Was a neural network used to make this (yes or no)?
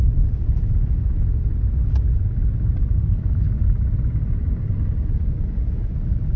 no